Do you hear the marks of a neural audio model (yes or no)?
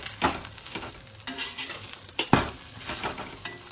no